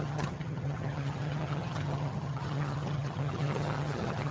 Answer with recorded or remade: remade